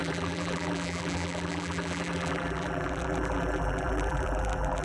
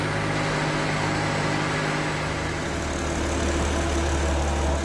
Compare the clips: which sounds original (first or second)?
second